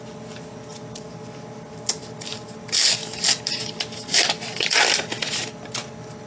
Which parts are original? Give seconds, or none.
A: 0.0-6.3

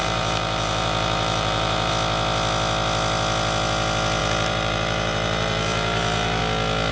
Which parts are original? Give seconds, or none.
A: 1.9-4.2; 6.4-6.9